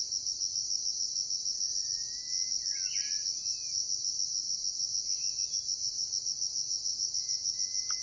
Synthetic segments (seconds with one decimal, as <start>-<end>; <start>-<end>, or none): none